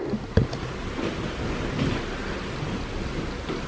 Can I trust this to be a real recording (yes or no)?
yes